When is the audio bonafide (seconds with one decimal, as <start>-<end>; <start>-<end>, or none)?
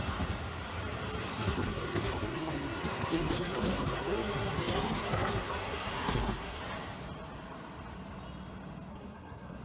0.0-1.3; 6.6-8.9